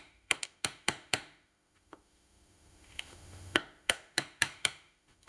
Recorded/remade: remade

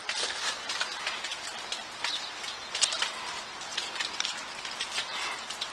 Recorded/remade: recorded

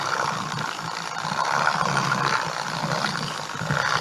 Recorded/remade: recorded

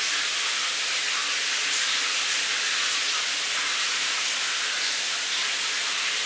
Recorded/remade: recorded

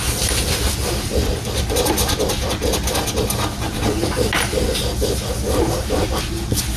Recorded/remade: recorded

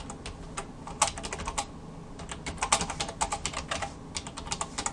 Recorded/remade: recorded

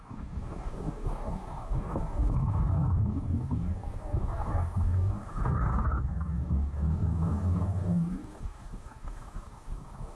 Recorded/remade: remade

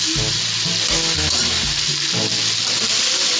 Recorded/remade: recorded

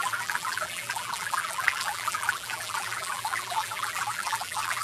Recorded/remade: remade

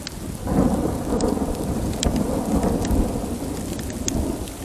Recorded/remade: recorded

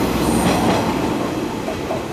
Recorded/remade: recorded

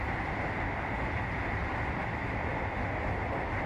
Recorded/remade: recorded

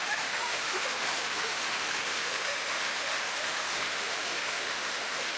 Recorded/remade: remade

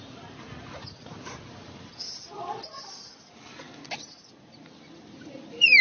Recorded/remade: recorded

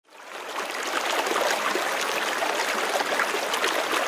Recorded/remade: recorded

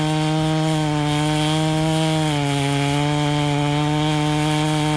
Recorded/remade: recorded